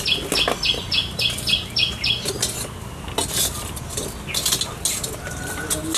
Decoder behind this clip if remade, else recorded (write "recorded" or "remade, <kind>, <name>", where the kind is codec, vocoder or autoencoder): recorded